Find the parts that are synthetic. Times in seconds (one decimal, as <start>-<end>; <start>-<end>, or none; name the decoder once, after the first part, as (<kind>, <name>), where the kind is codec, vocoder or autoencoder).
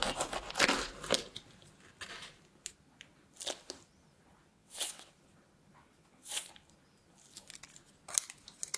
4.5-5.1 (vocoder, WaveNeXt); 6.0-6.5